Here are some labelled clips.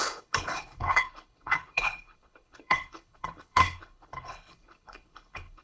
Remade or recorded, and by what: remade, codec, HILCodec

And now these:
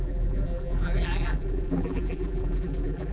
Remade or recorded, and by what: remade, vocoder, BigVGAN v2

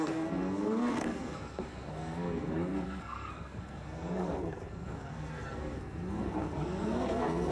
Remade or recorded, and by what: remade, codec, SNAC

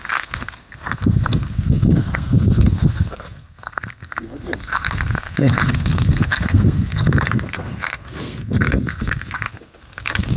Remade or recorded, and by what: remade, codec, SNAC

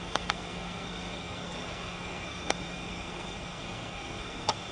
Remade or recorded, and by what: remade, codec, SNAC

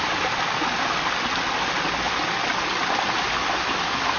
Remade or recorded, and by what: recorded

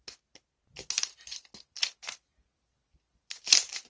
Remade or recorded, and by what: recorded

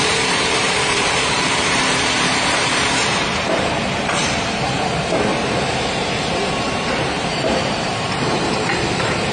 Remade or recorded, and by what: remade, vocoder, BigVGAN v2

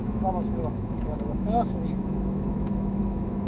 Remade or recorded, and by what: remade, autoencoder, DAC-VAE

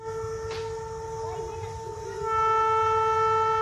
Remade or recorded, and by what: recorded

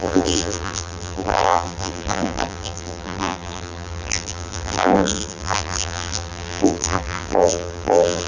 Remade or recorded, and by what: remade, vocoder, BigVGAN v2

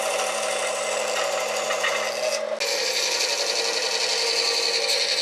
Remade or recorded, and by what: recorded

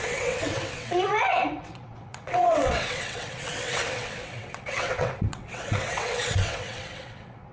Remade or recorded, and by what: remade, vocoder, WaveNeXt